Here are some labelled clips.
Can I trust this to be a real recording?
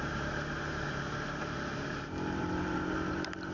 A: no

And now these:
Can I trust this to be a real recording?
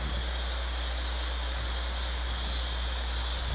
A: yes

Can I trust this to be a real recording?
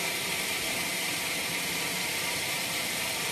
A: no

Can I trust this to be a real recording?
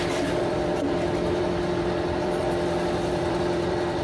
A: no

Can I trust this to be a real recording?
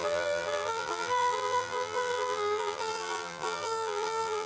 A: no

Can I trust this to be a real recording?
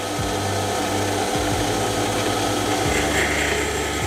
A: yes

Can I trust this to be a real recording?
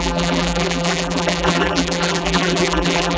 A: no